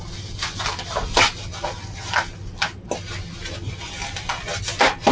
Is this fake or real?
real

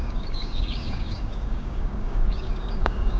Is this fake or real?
fake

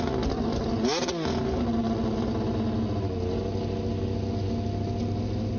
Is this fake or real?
real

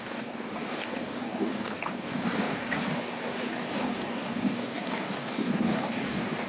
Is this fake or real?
fake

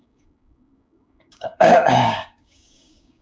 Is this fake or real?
fake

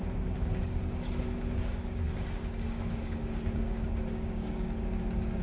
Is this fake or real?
fake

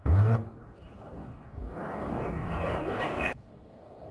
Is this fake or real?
fake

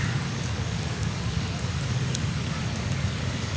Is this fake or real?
fake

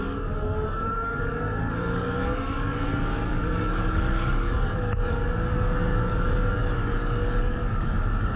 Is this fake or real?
fake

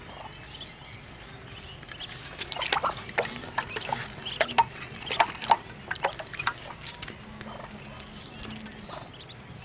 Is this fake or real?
real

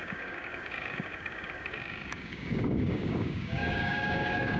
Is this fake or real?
fake